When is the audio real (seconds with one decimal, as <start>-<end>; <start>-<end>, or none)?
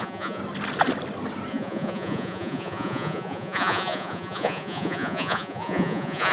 0.4-1.5